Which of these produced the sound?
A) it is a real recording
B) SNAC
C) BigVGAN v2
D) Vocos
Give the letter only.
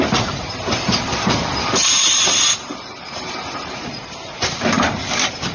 C